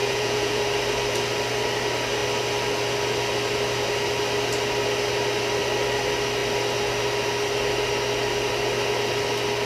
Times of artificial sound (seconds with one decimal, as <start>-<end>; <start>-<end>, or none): 0.0-0.6